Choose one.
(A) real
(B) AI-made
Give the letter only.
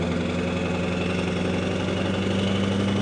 A